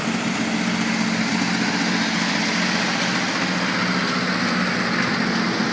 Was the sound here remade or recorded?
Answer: recorded